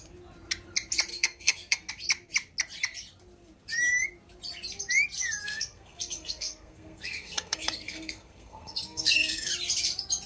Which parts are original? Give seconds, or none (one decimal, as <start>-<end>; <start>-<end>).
0.0-1.1; 1.9-5.4; 9.5-10.3